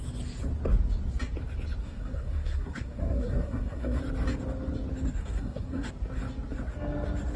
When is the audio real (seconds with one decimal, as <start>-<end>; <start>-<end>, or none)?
0.0-1.8; 4.0-5.2; 5.9-7.4